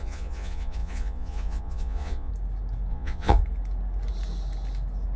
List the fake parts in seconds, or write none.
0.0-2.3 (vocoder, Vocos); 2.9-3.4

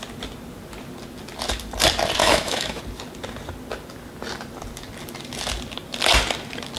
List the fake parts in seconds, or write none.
2.2-2.8 (autoencoder, DAC-VAE)

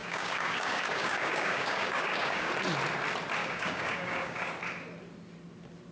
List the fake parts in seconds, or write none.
0.0-2.5 (codec, DAC); 3.4-4.5

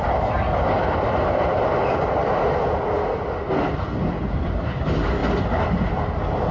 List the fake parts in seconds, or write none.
none

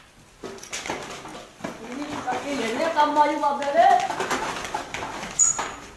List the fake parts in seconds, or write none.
none

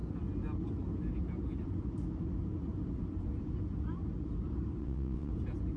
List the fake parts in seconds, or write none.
4.8-5.3 (vocoder, WaveNeXt)

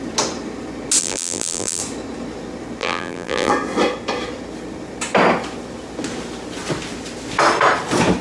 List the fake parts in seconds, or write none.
1.0-1.8 (vocoder, BigVGAN v2); 2.8-3.5

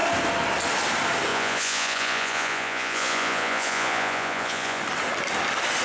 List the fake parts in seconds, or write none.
1.3-4.8 (vocoder, Vocos)